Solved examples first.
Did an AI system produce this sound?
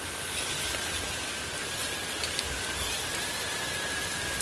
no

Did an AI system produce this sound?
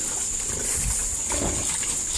no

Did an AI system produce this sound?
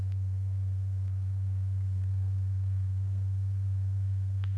yes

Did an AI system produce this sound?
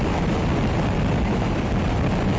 no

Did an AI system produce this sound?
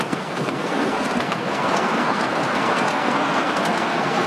yes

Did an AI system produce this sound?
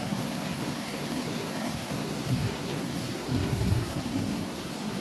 yes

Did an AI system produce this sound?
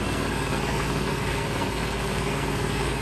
yes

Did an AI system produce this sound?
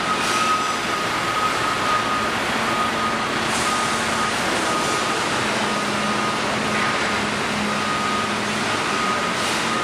no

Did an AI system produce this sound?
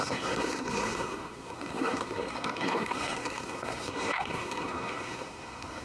yes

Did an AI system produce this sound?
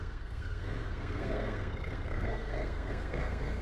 yes